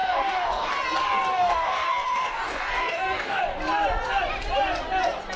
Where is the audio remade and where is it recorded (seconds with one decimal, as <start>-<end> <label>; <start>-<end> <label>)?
0.0-0.7 remade; 0.7-1.3 recorded; 1.3-3.4 remade; 3.4-5.4 recorded